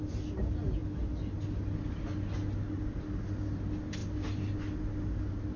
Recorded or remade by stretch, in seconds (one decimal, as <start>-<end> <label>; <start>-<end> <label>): 0.0-5.6 recorded